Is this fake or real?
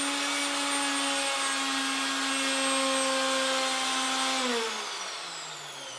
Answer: real